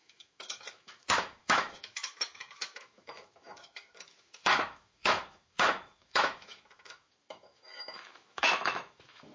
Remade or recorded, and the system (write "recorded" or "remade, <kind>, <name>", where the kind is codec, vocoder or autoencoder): remade, autoencoder, DAC-VAE